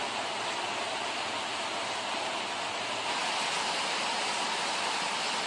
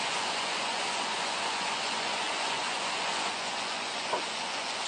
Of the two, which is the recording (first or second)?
first